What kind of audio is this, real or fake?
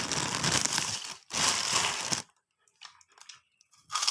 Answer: real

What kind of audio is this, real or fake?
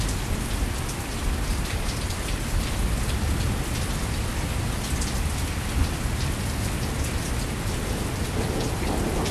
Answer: real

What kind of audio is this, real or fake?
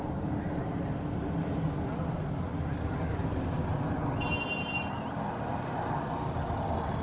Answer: real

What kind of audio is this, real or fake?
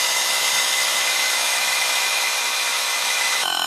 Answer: fake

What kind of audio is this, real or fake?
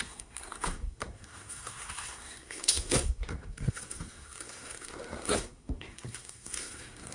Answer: fake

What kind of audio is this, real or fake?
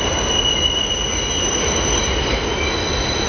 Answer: real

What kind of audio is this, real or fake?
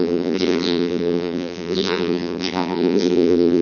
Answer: fake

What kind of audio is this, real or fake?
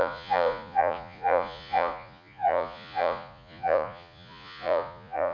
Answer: fake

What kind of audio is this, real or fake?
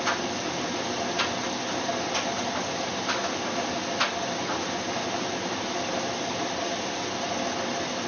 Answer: real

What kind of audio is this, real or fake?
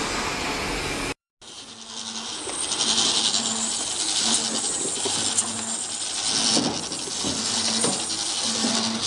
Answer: real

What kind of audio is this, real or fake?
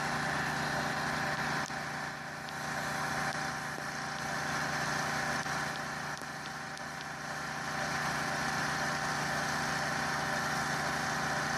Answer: real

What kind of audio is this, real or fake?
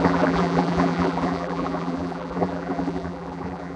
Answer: fake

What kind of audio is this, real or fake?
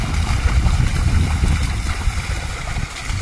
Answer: real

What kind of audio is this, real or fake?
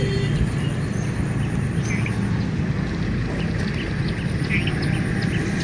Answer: real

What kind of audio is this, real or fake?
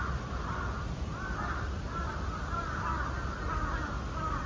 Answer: real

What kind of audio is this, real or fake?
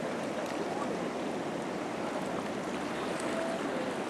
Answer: real